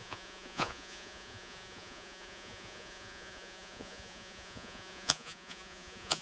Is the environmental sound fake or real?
fake